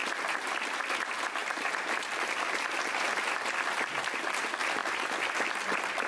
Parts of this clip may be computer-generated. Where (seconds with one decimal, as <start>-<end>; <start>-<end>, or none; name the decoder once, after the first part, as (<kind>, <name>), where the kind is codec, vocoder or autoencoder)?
0.0-0.5 (vocoder, BigVGAN v2); 1.4-4.3